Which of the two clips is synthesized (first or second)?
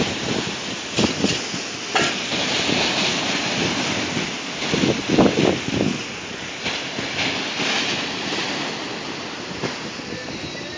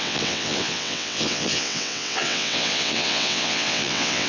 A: second